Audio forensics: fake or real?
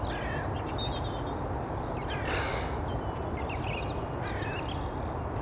real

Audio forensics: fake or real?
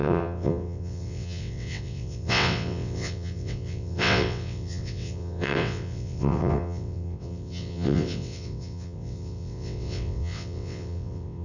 fake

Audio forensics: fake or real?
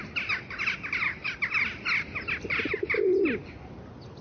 real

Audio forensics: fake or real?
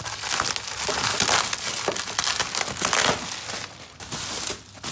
real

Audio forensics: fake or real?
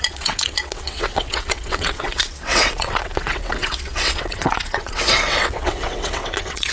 fake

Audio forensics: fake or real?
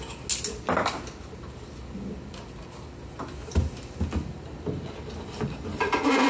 real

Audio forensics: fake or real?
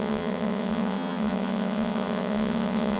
fake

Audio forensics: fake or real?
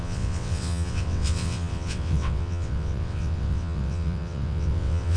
fake